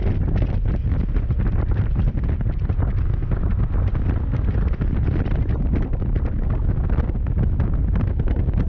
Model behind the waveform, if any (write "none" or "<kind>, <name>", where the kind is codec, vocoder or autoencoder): none